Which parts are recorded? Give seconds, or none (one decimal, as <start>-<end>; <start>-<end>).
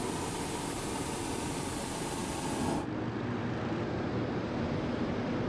0.0-5.5